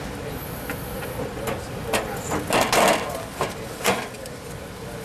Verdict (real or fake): real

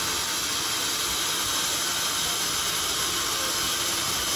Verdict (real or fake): real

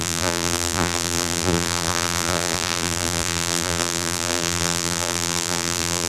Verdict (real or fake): fake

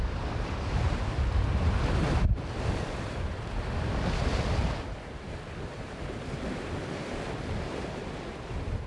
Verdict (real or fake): real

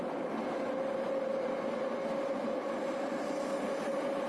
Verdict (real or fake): real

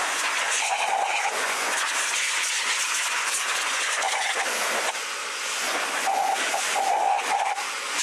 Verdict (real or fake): fake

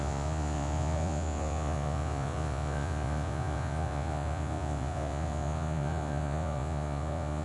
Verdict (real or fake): fake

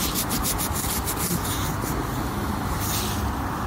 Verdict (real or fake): real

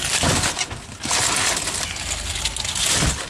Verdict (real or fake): real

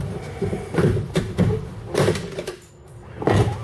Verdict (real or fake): real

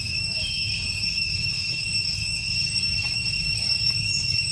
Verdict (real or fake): fake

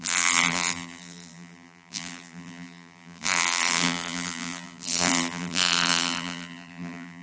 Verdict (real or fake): fake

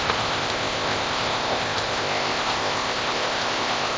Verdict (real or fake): fake